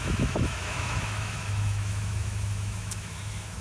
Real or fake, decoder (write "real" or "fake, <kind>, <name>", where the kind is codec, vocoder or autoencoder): fake, autoencoder, DAC-VAE